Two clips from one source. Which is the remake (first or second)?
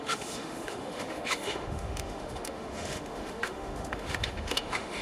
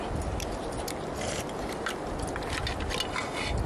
first